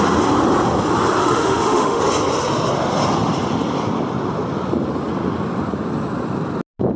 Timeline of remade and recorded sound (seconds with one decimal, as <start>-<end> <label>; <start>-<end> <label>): 0.0-1.2 recorded; 1.2-2.0 remade; 2.0-7.0 recorded